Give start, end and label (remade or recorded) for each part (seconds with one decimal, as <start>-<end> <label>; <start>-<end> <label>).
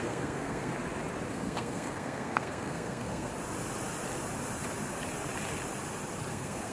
0.0-0.7 remade; 0.7-1.3 recorded; 1.3-3.3 remade; 3.3-6.3 recorded; 6.3-6.7 remade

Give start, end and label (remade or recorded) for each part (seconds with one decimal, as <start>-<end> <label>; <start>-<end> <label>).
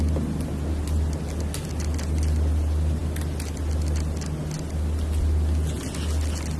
0.0-6.6 recorded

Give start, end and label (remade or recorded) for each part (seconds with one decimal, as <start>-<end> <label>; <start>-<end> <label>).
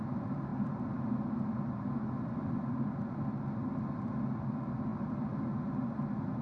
0.0-6.4 recorded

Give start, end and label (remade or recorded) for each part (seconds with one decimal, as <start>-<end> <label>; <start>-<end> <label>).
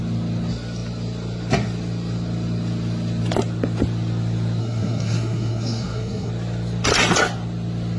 0.0-4.6 recorded; 4.6-6.3 remade; 6.3-8.0 recorded